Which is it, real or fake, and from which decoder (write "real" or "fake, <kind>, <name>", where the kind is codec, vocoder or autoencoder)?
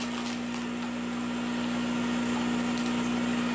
real